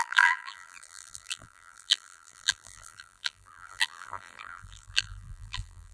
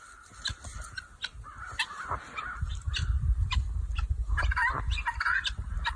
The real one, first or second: second